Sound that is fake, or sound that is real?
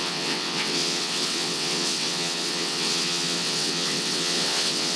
fake